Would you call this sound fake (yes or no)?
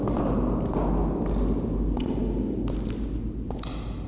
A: no